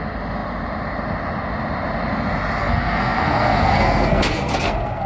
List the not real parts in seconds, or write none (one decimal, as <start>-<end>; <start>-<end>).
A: 2.6-5.1